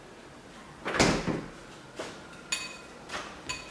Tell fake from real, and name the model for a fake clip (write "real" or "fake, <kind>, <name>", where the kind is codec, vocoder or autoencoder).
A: real